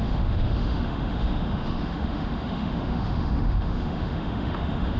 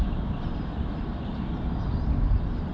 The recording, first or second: second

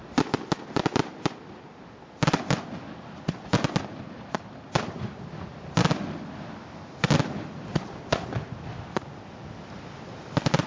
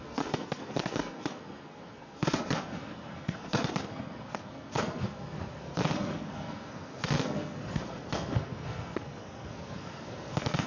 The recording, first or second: first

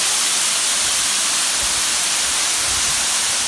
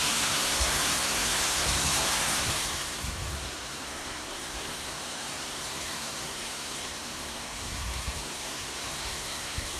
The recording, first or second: first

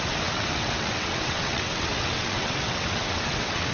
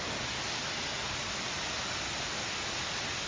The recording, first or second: second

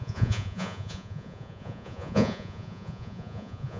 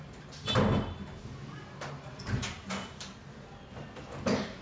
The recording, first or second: second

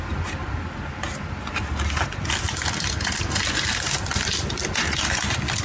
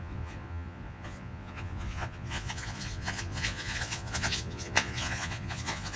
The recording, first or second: first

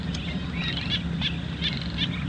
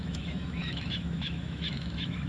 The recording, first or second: first